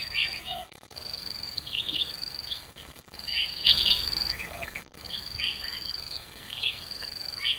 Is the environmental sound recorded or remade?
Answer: remade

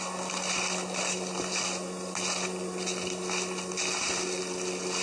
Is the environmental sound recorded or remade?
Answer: recorded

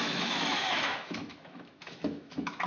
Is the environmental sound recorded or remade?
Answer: remade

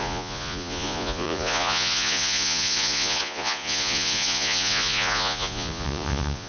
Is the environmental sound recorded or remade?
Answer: remade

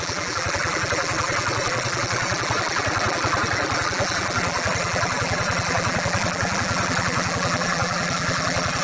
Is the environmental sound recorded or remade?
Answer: remade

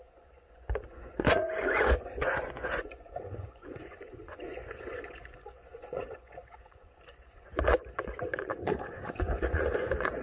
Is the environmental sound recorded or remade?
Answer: remade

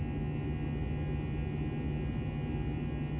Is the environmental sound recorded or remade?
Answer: recorded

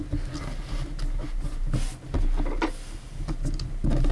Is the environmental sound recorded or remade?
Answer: recorded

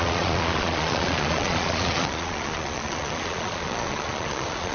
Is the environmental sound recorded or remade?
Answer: remade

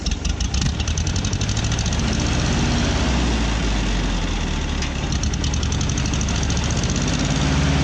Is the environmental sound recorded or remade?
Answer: recorded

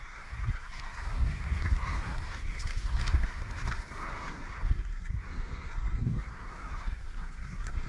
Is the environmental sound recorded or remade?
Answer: remade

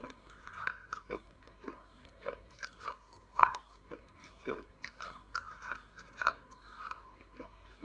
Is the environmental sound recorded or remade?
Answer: remade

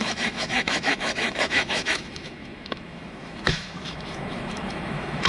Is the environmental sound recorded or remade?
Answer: remade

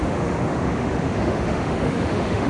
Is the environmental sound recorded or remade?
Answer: remade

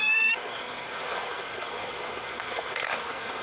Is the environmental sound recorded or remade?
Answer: remade